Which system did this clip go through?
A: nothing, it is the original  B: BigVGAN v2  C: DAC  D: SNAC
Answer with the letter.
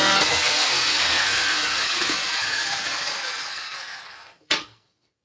D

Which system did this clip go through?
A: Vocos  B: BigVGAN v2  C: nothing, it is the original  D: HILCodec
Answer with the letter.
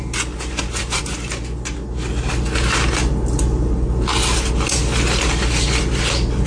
C